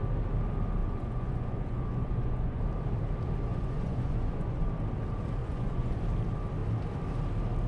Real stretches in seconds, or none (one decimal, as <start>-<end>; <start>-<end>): 0.0-0.8; 2.6-3.5; 4.7-5.4; 6.0-7.7